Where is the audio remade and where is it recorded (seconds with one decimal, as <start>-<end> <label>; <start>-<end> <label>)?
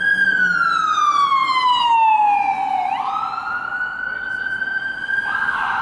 0.0-5.0 recorded; 5.0-5.8 remade